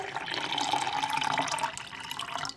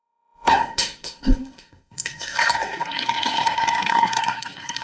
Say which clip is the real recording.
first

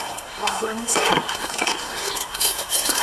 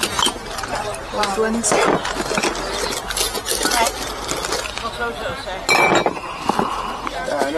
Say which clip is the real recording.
second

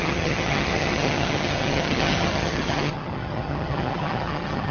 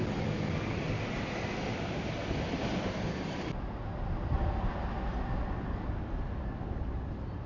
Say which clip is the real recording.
second